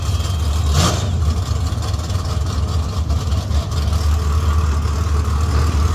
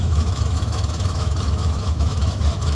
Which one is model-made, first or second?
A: second